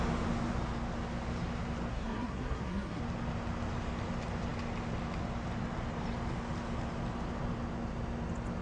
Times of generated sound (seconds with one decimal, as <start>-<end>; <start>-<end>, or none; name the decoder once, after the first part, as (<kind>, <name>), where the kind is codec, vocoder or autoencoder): 1.9-3.0 (codec, SNAC)